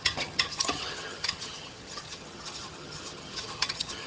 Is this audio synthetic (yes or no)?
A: yes